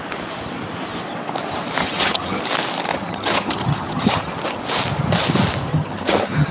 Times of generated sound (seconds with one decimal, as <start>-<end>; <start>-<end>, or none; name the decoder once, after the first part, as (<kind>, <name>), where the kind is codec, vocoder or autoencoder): 1.8-2.4 (vocoder, HiFi-GAN); 2.9-4.3; 5.7-6.5